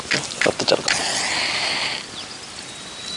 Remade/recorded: recorded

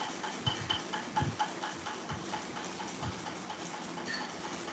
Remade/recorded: recorded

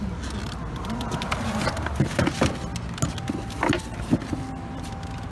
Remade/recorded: recorded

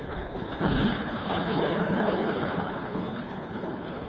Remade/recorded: remade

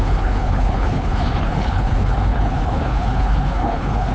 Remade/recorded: remade